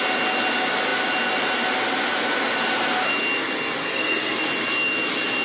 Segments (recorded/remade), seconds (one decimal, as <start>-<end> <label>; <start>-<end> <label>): 0.0-3.8 recorded; 3.8-4.4 remade; 4.4-5.4 recorded